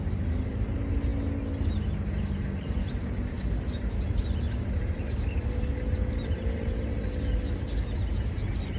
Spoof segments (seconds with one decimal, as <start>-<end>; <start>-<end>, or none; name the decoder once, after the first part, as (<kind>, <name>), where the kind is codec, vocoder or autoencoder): none